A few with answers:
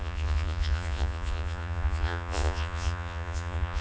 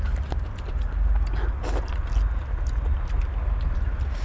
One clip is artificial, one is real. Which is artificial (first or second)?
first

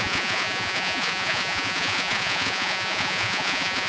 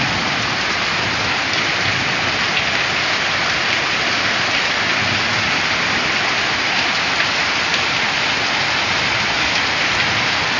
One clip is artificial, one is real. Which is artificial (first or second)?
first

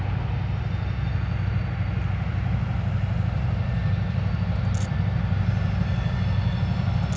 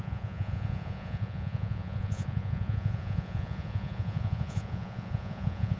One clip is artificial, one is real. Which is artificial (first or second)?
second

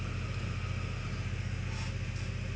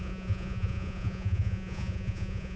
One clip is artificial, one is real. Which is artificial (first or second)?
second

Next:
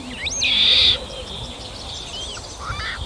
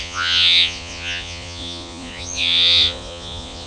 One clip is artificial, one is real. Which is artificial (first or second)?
second